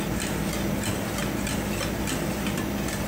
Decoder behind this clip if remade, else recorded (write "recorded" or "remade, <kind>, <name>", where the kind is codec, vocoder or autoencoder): recorded